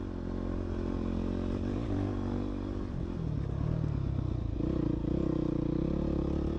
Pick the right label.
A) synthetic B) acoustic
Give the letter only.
B